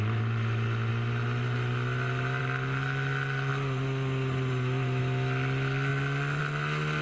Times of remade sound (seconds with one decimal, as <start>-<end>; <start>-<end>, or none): none